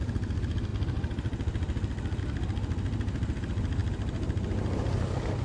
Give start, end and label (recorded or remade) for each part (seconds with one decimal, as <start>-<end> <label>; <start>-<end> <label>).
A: 0.0-5.4 recorded